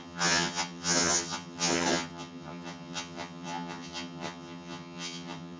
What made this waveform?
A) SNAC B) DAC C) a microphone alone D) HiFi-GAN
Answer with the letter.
D